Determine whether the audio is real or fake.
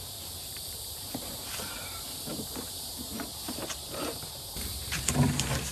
fake